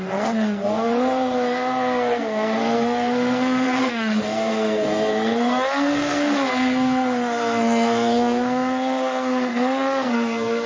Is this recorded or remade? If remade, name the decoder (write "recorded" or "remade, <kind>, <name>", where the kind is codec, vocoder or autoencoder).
remade, codec, SNAC